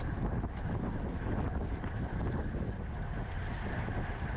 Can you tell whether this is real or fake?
real